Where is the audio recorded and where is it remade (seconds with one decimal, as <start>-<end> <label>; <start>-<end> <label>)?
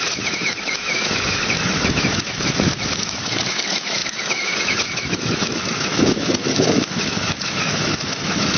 0.0-8.6 remade